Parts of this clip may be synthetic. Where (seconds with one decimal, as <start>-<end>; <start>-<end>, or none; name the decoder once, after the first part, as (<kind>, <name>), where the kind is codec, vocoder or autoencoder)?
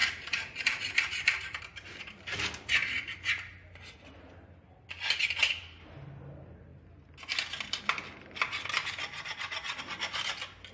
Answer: 0.0-1.6 (vocoder, BigVGAN v2)